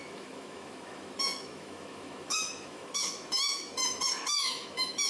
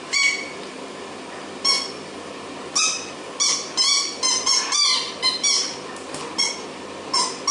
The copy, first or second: first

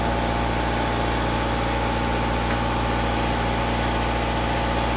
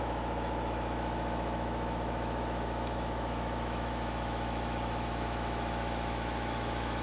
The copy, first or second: second